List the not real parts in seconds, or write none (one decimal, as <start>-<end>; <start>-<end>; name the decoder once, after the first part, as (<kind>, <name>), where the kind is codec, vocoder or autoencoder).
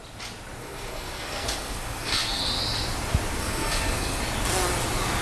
0.6-2.4 (codec, SNAC); 3.4-4.2